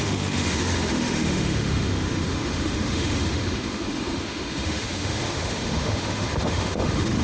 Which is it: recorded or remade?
remade